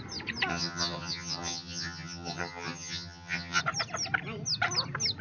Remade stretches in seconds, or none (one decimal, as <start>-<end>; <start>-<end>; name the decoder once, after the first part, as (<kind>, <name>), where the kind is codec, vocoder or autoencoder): 0.5-3.6 (vocoder, HiFi-GAN)